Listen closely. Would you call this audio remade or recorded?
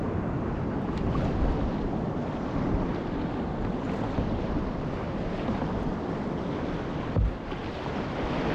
recorded